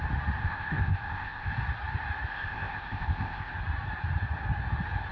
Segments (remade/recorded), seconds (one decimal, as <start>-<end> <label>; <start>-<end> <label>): 0.0-0.4 recorded; 0.4-1.5 remade; 1.5-2.3 recorded; 2.3-3.5 remade; 3.5-5.1 recorded